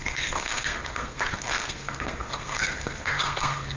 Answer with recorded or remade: remade